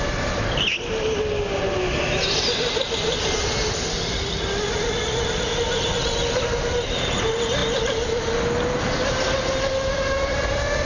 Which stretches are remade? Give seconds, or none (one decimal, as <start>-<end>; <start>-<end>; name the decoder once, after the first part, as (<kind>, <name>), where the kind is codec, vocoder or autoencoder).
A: none